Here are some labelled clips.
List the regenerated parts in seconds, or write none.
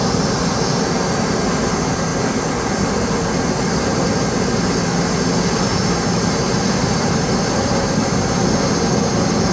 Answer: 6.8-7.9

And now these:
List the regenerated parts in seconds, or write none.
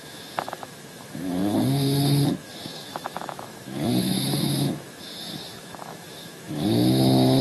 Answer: 0.0-1.4; 2.4-7.4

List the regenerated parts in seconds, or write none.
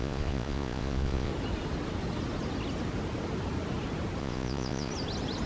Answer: 0.0-1.3; 4.2-4.9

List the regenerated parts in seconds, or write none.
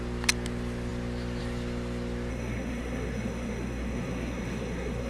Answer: 2.3-5.1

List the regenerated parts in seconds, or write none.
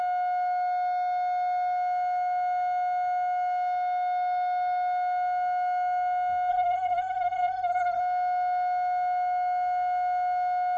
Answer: 6.5-8.0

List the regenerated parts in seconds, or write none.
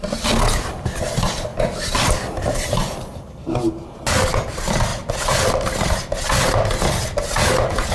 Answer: none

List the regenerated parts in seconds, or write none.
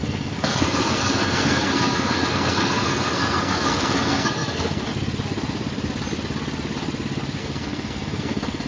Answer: 0.0-4.9; 7.4-8.7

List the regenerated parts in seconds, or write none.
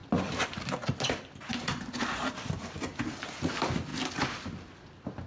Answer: none